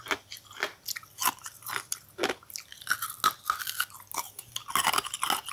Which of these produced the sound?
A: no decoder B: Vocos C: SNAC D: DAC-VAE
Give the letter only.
A